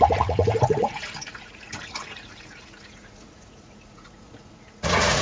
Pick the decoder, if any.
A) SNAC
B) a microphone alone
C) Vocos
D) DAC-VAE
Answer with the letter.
C